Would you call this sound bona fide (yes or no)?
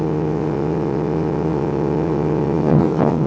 no